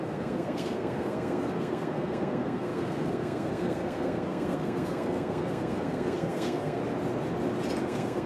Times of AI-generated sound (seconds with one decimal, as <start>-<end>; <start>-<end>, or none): 0.0-6.8; 7.8-8.3